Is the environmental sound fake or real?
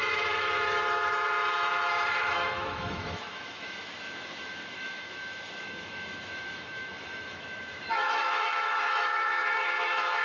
fake